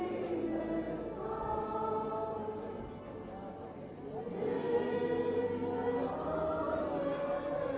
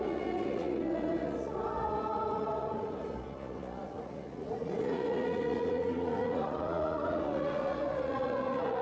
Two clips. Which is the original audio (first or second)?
first